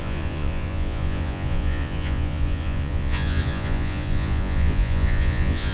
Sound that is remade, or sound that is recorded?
remade